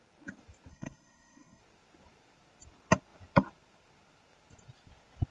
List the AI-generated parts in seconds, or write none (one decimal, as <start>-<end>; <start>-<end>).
0.7-1.6